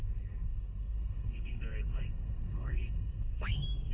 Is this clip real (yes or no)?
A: no